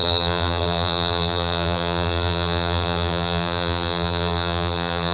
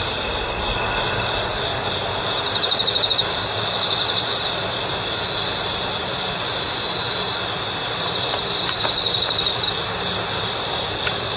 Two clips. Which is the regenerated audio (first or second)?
first